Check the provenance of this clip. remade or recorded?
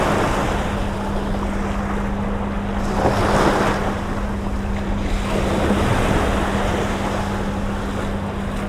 recorded